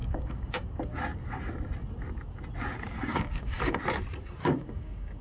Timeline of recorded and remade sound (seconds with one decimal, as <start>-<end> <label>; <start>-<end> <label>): 0.0-0.6 remade; 0.6-3.1 recorded; 3.1-3.8 remade; 3.8-4.4 recorded; 4.4-5.2 remade